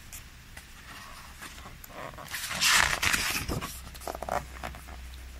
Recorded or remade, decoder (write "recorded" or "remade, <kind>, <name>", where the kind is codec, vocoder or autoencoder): recorded